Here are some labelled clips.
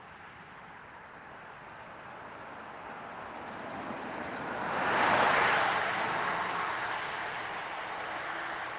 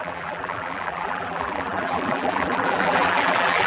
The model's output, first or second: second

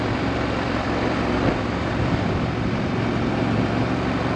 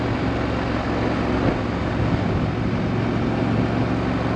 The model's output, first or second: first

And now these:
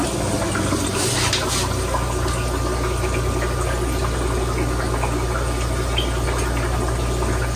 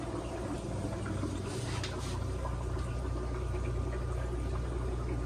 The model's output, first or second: second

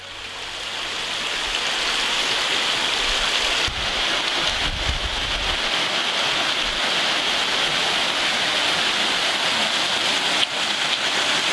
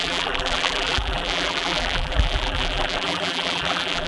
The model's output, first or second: second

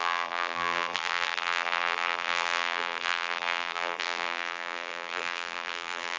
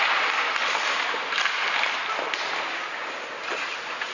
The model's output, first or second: first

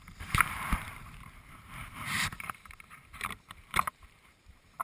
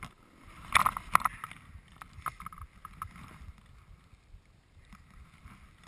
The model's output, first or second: first